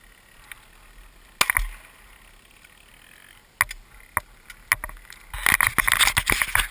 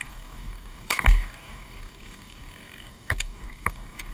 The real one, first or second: first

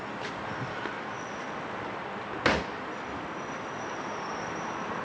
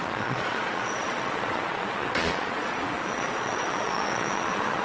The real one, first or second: first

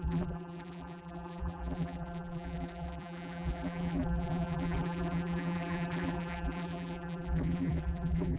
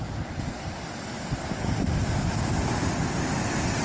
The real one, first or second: second